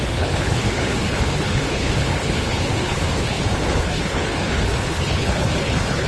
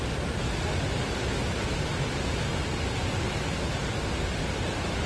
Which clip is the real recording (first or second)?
second